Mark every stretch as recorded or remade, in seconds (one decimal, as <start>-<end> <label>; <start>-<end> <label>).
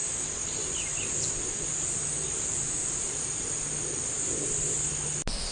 0.0-2.8 recorded; 2.8-4.9 remade; 4.9-5.5 recorded